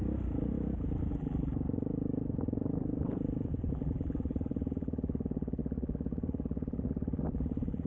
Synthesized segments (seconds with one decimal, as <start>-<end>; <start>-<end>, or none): 1.1-1.5; 3.7-7.9